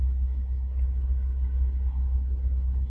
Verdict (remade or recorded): recorded